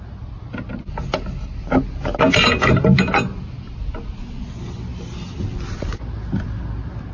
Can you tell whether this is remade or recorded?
recorded